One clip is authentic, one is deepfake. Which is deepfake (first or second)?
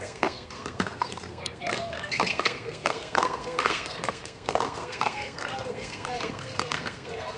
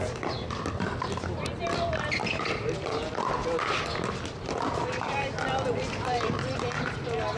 first